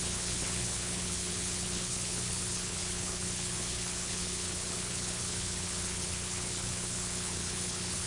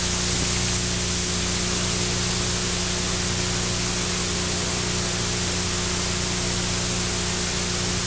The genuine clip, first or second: second